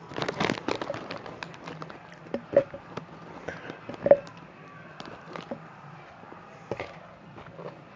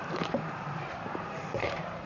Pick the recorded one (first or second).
first